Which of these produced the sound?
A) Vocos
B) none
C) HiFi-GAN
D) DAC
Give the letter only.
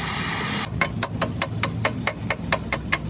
B